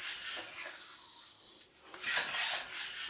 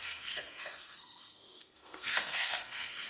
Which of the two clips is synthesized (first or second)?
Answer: second